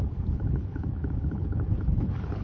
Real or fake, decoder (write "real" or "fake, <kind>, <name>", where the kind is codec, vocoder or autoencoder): fake, codec, HILCodec